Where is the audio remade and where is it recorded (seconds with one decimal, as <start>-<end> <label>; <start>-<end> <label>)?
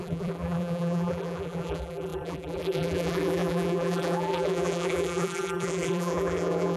0.0-6.8 remade